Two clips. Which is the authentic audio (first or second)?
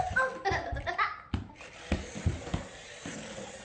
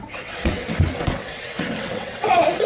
first